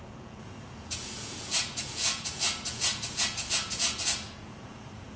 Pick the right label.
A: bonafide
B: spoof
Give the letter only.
B